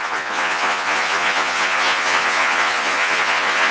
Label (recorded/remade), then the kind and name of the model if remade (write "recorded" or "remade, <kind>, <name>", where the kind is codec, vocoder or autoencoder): remade, vocoder, Vocos